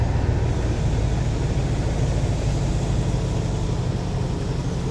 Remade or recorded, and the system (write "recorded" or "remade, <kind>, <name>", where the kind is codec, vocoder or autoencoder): recorded